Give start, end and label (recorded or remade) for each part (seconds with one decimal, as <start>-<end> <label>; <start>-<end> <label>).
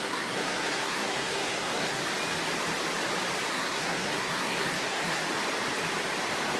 0.0-2.0 remade; 2.0-3.5 recorded; 3.5-5.2 remade; 5.2-6.6 recorded